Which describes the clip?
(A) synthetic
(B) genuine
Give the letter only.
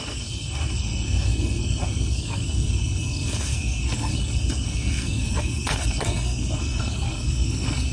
A